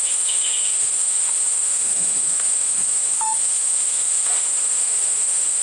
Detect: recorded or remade remade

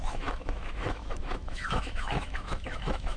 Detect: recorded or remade remade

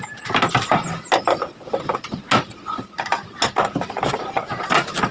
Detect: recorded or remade recorded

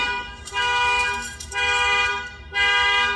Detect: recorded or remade remade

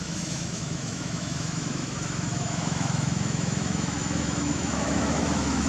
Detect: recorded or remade remade